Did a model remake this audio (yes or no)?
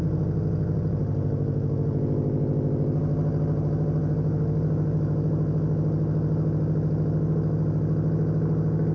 no